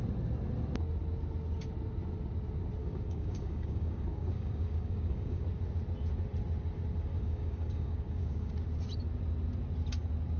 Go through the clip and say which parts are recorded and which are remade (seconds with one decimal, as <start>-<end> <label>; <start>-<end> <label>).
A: 0.0-2.8 recorded; 2.8-5.4 remade; 5.4-7.1 recorded; 7.1-8.5 remade; 8.5-10.4 recorded